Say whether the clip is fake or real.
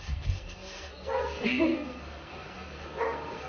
fake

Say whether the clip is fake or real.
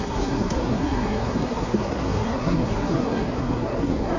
fake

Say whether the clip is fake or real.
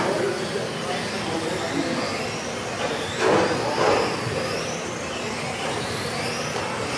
real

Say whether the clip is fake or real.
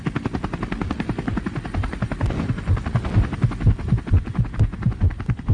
real